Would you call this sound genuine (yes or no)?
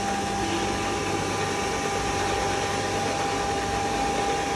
yes